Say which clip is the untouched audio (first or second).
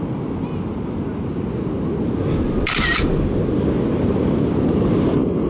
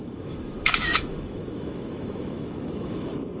first